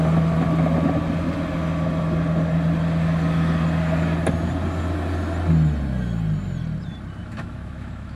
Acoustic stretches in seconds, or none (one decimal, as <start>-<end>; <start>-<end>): 0.0-7.2